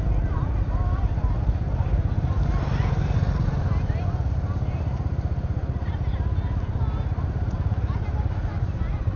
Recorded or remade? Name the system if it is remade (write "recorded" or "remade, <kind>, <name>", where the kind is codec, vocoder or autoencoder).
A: recorded